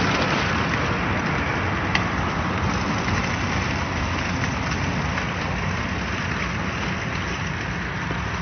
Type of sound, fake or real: real